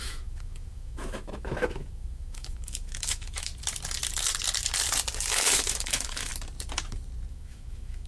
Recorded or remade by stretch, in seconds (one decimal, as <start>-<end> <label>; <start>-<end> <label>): 0.0-3.5 remade; 3.5-5.3 recorded; 5.3-6.3 remade; 6.3-7.3 recorded; 7.3-8.1 remade